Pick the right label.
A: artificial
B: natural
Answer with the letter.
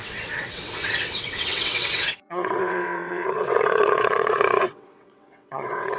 A